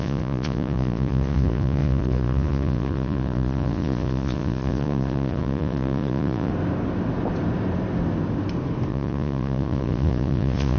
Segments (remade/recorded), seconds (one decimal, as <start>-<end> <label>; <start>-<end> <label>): 0.0-6.5 remade; 6.5-8.9 recorded; 8.9-10.8 remade